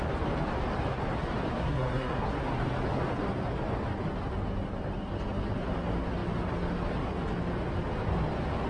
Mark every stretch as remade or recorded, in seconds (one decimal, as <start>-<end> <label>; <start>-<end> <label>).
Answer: 0.0-1.6 recorded; 1.6-2.3 remade; 2.3-8.7 recorded